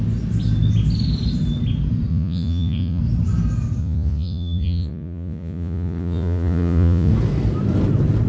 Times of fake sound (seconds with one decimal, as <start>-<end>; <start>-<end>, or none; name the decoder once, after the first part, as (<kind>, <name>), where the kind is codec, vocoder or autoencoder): 2.1-3.0 (vocoder, Vocos); 3.8-7.1